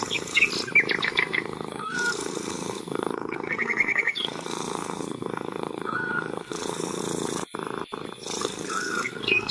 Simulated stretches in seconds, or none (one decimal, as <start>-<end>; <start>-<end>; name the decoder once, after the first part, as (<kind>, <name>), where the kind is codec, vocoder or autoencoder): 0.0-0.5 (codec, SNAC); 1.0-7.0; 8.4-9.5

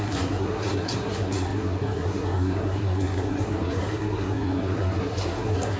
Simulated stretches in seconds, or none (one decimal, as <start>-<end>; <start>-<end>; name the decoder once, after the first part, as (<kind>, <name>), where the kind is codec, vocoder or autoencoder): 0.0-5.8 (codec, SNAC)